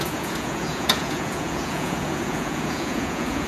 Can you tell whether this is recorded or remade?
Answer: remade